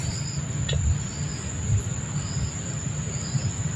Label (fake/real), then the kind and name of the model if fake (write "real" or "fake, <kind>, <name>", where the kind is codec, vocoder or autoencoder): real